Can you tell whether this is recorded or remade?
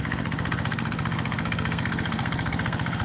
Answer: remade